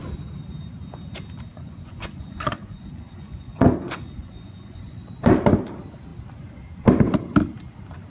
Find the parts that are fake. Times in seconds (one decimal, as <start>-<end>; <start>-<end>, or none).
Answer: 1.5-5.3